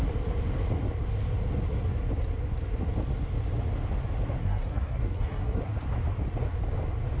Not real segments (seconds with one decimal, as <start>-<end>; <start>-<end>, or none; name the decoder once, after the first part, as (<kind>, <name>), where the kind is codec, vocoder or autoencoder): 4.4-5.6 (codec, SNAC)